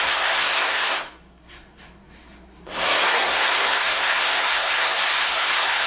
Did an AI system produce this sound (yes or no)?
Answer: yes